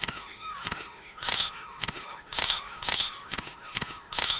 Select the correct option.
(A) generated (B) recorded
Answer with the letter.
A